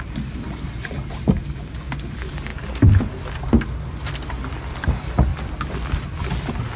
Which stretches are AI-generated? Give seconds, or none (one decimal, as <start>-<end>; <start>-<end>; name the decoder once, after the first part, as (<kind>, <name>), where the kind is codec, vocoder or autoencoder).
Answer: none